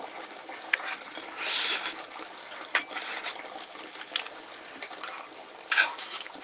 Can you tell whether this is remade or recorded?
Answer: recorded